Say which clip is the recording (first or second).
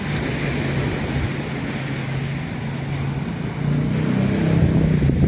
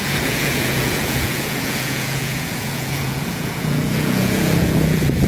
first